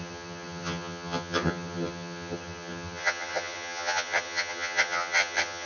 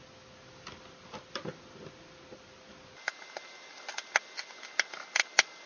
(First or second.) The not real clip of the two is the first